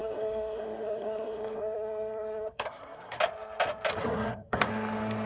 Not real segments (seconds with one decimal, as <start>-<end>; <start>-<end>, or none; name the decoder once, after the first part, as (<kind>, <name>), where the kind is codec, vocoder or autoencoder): 0.0-3.2 (codec, SNAC); 4.0-4.7